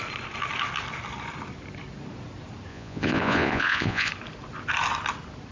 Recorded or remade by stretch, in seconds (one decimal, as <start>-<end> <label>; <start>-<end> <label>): 0.0-2.7 recorded; 2.7-4.1 remade; 4.1-5.5 recorded